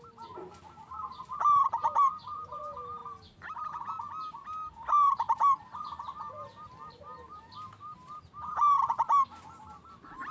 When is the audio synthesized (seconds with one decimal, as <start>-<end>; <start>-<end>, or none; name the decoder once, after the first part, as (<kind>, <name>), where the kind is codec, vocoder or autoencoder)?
none